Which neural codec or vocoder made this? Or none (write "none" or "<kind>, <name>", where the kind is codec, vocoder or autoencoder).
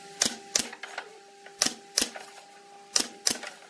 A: none